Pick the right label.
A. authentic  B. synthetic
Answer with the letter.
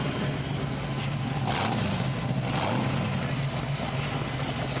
A